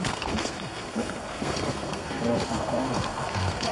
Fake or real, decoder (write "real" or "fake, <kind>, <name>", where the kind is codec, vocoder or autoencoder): fake, codec, SNAC